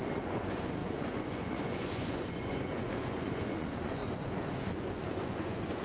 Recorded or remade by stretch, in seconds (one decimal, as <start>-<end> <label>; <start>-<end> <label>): 0.0-5.8 remade